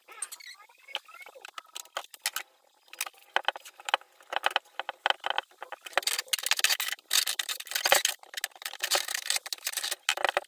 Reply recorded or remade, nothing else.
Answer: recorded